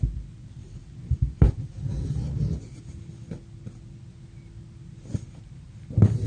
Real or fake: real